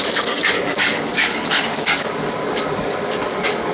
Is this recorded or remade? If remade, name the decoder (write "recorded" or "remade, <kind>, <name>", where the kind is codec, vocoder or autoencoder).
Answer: remade, codec, DAC